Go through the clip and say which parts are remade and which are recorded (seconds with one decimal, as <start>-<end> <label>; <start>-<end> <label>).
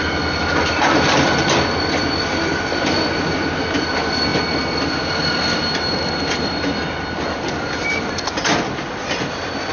0.0-9.7 recorded